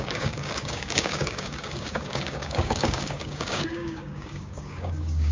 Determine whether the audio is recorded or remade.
remade